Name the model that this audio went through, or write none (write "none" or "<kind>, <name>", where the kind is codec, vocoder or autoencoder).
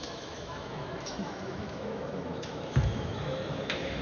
autoencoder, DAC-VAE